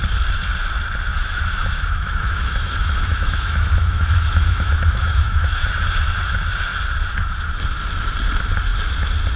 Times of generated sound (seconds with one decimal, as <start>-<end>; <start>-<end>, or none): 1.1-5.7